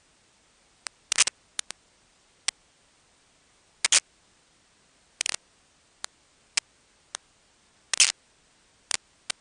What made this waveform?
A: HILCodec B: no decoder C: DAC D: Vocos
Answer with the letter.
B